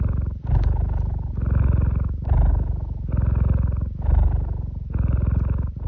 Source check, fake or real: real